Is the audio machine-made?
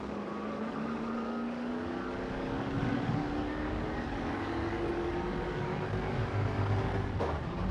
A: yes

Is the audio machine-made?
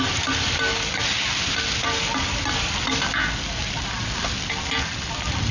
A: no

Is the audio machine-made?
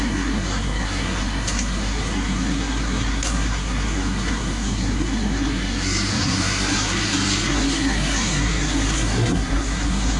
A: yes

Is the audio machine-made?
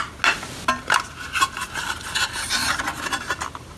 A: no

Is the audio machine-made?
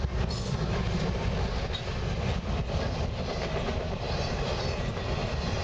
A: no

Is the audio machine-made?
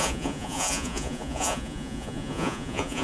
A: yes